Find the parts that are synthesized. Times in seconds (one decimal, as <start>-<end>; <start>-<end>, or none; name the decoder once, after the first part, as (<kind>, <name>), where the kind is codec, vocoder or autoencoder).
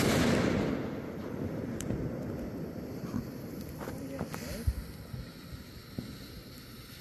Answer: none